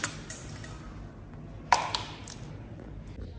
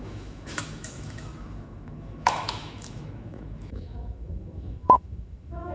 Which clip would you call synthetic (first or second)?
second